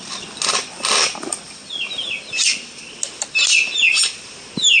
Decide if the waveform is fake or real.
real